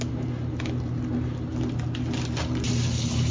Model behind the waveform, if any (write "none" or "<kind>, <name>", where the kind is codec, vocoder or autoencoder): none